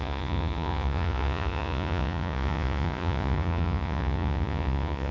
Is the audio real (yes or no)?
no